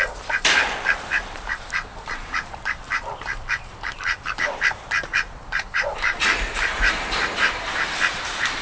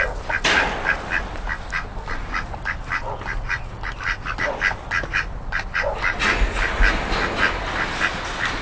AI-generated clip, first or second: first